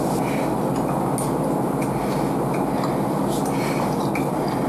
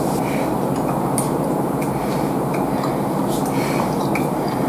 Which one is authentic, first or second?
first